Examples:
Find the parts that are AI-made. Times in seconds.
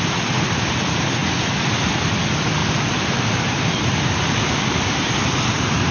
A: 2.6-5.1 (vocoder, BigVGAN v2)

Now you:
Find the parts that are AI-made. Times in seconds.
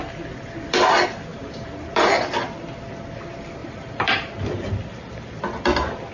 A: 1.3-2.1 (vocoder, BigVGAN v2); 3.6-4.7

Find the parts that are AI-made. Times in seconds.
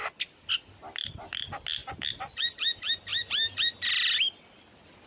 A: none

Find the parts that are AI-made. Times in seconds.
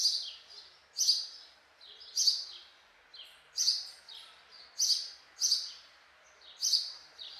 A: 6.6-7.4 (vocoder, BigVGAN v2)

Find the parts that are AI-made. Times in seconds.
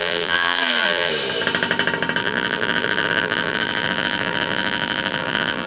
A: 0.0-1.1 (vocoder, BigVGAN v2); 2.2-5.7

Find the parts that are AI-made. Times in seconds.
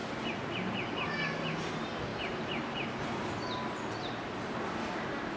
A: 2.1-3.3 (vocoder, BigVGAN v2)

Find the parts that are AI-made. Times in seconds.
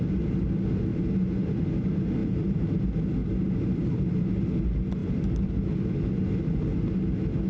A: 0.9-1.6 (vocoder, BigVGAN v2); 2.2-2.8; 3.2-4.4; 5.0-5.6